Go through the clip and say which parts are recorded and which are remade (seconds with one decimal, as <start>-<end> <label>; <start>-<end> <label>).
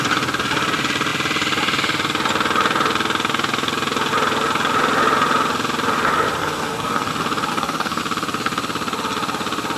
0.0-6.4 recorded; 6.4-7.1 remade; 7.1-7.5 recorded; 7.5-8.0 remade; 8.0-9.8 recorded